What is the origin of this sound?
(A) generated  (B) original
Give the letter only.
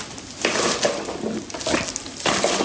B